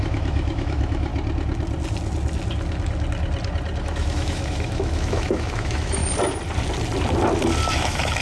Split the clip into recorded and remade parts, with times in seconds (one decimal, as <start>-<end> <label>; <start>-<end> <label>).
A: 0.0-1.1 remade; 1.1-3.8 recorded; 3.8-6.0 remade; 6.0-7.7 recorded; 7.7-8.2 remade

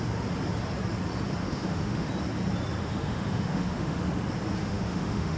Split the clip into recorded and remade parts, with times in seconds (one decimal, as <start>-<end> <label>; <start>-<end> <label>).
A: 0.0-1.4 recorded; 1.4-2.1 remade; 2.1-2.8 recorded; 2.8-4.0 remade; 4.0-4.6 recorded; 4.6-5.4 remade

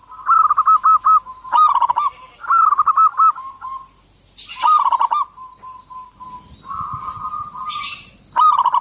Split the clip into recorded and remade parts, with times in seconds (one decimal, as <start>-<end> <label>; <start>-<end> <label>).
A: 0.0-8.8 recorded

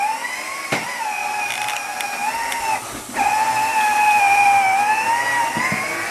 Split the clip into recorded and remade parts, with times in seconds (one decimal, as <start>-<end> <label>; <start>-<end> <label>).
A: 0.0-6.1 recorded

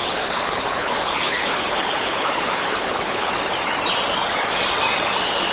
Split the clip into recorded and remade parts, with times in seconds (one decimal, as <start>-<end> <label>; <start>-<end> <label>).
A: 0.0-3.3 remade; 3.3-5.5 recorded

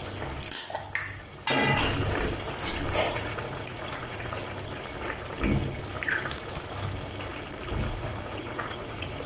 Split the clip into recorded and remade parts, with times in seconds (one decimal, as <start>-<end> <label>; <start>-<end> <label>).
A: 0.0-3.1 recorded; 3.1-4.4 remade; 4.4-7.9 recorded; 7.9-9.3 remade

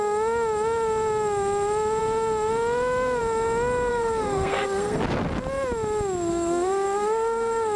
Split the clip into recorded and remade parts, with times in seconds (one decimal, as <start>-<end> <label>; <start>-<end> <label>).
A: 0.0-3.9 recorded; 3.9-5.0 remade; 5.0-6.3 recorded; 6.3-7.8 remade